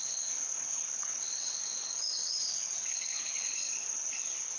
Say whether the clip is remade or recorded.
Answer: remade